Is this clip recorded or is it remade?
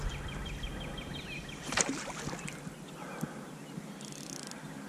recorded